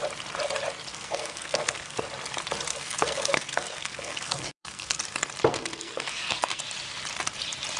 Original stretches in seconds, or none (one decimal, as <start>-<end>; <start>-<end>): 0.0-0.9; 2.0-2.7; 5.0-5.5; 6.6-7.8